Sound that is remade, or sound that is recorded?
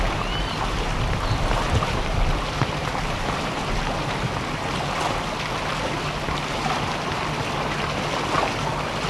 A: recorded